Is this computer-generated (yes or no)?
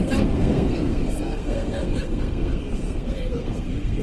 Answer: yes